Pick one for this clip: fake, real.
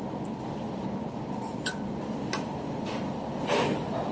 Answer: real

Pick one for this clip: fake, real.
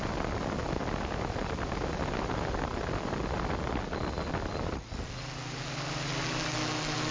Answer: real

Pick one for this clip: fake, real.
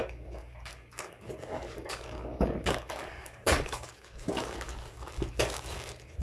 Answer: fake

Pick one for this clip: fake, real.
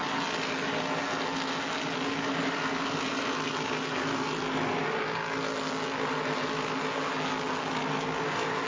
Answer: real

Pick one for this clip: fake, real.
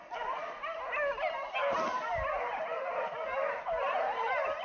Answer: real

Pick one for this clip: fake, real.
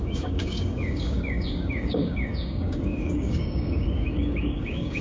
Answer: fake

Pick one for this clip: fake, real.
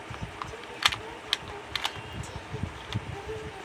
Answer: real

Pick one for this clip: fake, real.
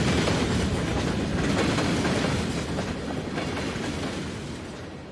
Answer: real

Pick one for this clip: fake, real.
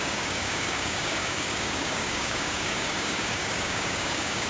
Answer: fake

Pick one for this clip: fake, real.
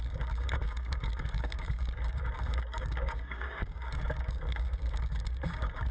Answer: fake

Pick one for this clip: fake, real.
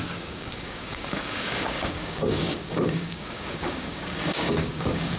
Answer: fake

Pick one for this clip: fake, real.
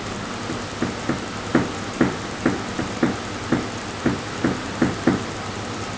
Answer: real